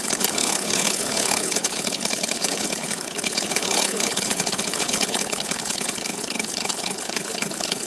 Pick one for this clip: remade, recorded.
remade